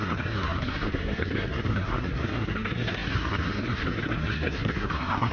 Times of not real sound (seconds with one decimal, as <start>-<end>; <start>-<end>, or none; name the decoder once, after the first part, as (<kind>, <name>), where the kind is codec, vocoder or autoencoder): 0.0-5.3 (codec, SNAC)